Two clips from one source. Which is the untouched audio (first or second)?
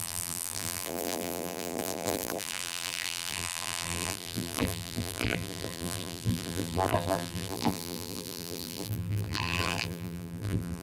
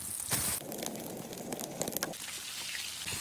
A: second